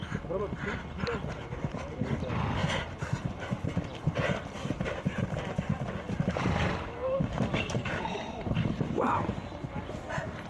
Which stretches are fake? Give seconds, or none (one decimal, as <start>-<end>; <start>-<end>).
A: 2.6-4.2; 7.0-9.1